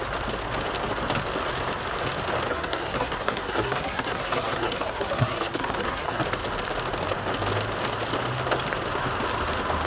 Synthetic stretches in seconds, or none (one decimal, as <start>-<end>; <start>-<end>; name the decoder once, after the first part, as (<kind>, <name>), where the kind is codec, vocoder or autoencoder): 2.5-6.2 (codec, SNAC)